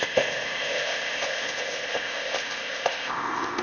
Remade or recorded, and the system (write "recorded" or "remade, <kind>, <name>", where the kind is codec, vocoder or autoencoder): remade, codec, ZipCodec